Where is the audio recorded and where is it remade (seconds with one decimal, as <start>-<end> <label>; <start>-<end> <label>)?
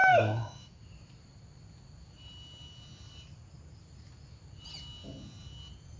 0.0-0.8 remade; 0.8-6.0 recorded